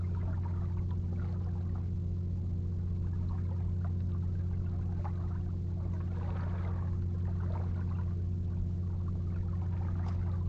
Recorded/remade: recorded